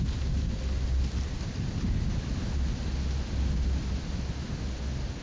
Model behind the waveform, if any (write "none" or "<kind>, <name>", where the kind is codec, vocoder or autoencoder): none